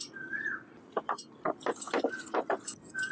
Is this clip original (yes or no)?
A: yes